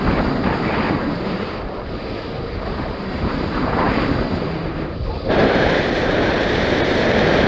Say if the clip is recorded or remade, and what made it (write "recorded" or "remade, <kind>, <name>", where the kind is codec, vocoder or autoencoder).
remade, vocoder, BigVGAN v2